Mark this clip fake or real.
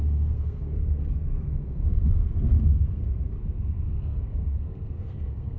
fake